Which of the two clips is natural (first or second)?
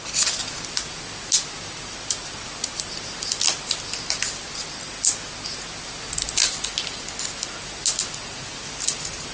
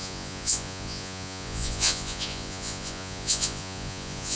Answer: first